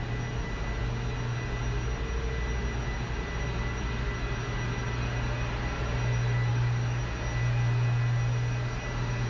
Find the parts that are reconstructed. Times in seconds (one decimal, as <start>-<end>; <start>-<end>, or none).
6.5-7.0